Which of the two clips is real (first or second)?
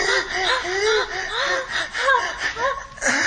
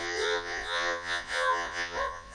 first